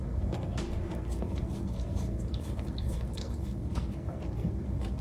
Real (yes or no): no